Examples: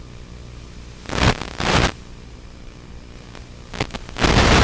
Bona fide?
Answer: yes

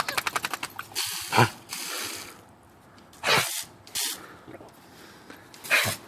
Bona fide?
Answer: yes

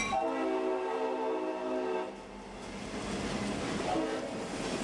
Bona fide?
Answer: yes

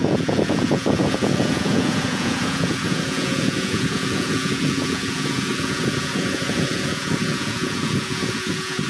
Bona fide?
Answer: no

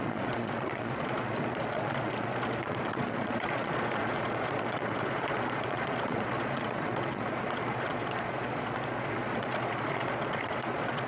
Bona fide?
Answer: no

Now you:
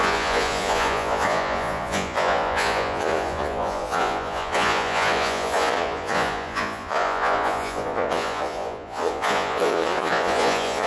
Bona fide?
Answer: no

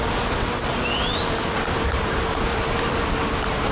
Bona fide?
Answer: yes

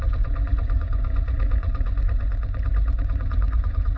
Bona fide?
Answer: no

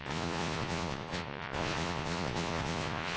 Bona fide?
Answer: no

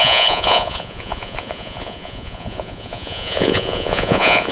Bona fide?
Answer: no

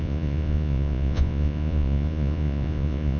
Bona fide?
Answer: no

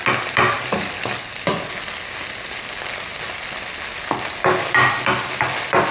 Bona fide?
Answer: yes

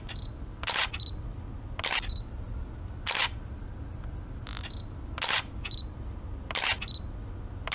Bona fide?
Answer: yes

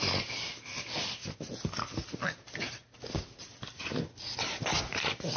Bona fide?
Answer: yes